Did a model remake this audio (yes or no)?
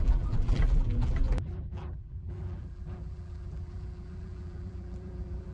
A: yes